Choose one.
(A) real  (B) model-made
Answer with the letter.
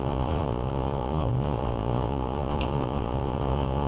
B